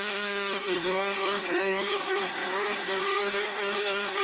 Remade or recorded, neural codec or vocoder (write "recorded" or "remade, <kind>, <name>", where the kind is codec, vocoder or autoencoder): remade, codec, SNAC